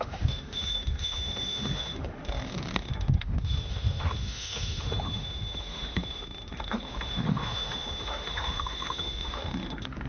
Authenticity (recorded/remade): remade